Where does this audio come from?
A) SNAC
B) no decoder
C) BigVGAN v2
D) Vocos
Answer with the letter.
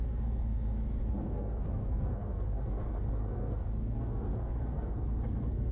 A